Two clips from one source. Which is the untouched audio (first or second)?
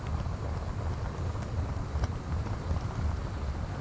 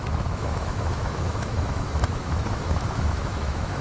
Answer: first